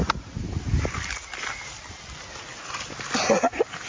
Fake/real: real